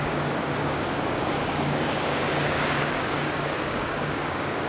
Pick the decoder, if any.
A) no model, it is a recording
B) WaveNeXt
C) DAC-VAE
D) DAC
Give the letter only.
D